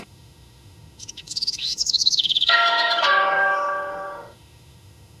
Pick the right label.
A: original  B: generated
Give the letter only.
B